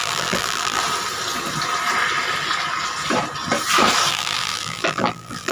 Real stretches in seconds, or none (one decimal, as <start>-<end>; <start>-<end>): 0.8-4.1